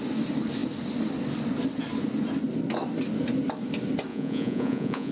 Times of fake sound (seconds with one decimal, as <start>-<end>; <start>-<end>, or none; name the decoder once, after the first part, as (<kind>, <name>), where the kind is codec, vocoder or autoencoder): 4.1-5.1 (vocoder, Vocos)